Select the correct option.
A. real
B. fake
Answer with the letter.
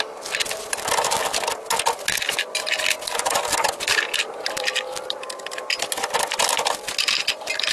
A